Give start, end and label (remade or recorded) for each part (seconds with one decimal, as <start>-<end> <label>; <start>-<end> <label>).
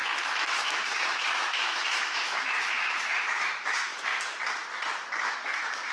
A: 0.0-4.1 remade; 4.1-5.2 recorded; 5.2-5.9 remade